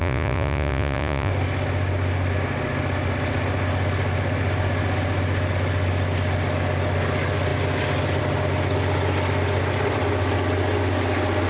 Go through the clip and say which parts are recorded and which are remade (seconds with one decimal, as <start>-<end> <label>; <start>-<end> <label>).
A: 0.0-1.3 remade; 1.3-11.5 recorded

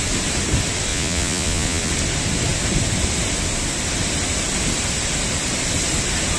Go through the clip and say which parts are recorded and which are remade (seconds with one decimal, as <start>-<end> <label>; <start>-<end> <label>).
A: 0.0-0.9 recorded; 0.9-1.9 remade; 1.9-6.4 recorded

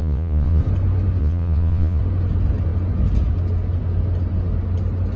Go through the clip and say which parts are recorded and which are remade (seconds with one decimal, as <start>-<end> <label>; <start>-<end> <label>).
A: 0.0-0.6 remade; 0.6-1.2 recorded; 1.2-2.0 remade; 2.0-5.2 recorded

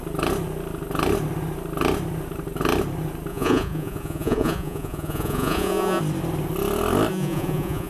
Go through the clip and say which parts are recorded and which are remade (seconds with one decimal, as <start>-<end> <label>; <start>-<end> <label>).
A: 0.0-3.3 recorded; 3.3-6.0 remade; 6.0-7.1 recorded; 7.1-7.9 remade

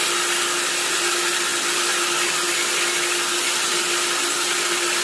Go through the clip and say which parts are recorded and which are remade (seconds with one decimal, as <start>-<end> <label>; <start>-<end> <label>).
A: 0.0-5.0 recorded